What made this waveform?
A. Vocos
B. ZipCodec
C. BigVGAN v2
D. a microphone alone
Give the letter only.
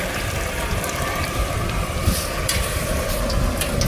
C